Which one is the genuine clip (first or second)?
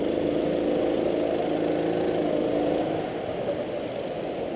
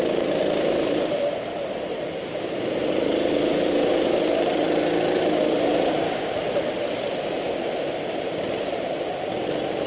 first